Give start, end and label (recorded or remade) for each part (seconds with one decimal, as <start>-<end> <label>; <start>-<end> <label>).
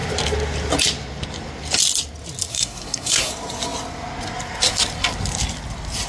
0.0-2.5 recorded; 2.5-3.3 remade; 3.3-6.1 recorded